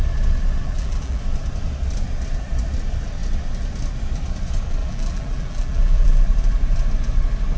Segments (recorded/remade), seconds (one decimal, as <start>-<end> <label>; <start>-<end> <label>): 0.0-0.6 recorded; 0.6-1.2 remade; 1.2-4.8 recorded; 4.8-6.2 remade; 6.2-7.6 recorded